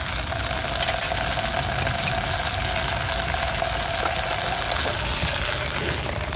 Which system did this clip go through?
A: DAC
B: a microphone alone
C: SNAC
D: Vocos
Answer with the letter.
B